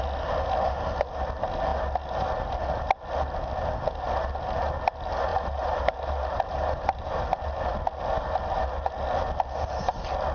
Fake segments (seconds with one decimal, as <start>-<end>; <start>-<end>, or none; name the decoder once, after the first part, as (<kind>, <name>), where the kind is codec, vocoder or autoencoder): 5.3-7.1 (vocoder, BigVGAN v2)